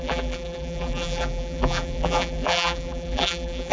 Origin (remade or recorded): remade